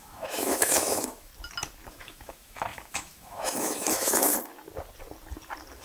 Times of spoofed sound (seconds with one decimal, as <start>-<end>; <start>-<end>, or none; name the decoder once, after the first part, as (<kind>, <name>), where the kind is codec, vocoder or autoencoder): 0.0-1.3 (autoencoder, DAC-VAE); 1.9-4.3